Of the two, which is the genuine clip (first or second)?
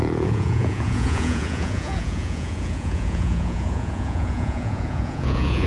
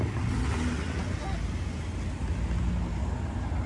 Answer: second